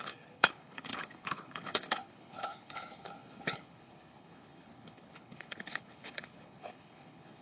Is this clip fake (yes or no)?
yes